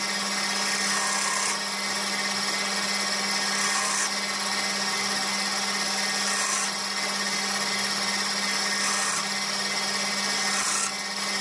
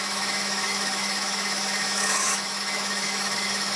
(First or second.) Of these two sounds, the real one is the first